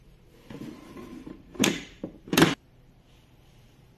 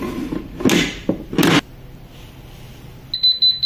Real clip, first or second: second